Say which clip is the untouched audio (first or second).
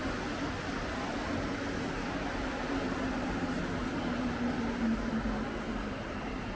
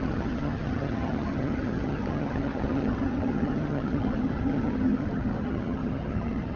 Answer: first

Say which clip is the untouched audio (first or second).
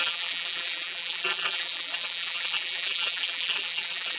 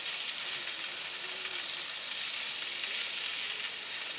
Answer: second